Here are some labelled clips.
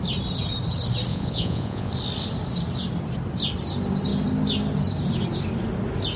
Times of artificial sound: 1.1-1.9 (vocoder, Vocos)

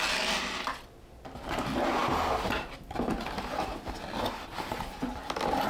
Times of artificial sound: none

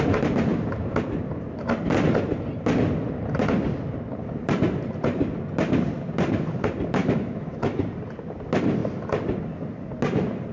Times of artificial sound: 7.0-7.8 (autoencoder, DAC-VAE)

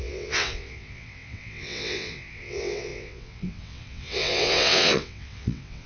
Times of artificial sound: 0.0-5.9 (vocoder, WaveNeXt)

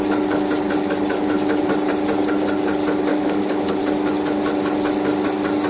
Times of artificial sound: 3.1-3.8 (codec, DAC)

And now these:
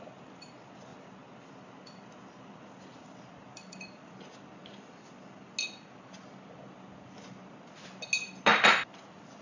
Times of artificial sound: none